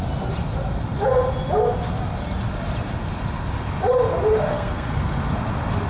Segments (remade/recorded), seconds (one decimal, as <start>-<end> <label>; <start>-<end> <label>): 0.0-4.5 recorded; 4.5-5.2 remade; 5.2-5.9 recorded